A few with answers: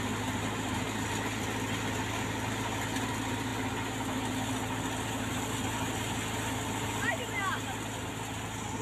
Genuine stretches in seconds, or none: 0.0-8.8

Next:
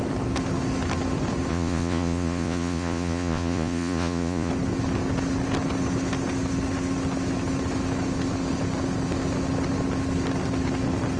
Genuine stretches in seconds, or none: 0.0-1.5; 4.5-11.2

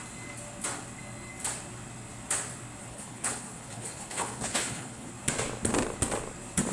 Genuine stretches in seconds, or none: 0.0-2.8; 5.1-6.7

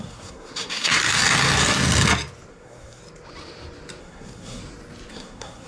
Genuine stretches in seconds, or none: 1.0-2.5; 3.0-4.0; 4.6-5.1

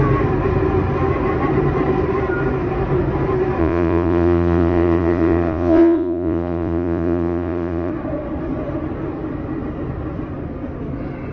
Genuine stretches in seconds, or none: 0.0-3.6; 7.9-11.3

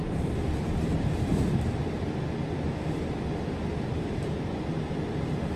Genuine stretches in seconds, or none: 1.8-3.7; 4.5-5.6